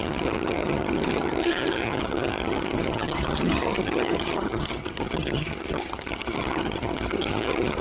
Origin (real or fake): fake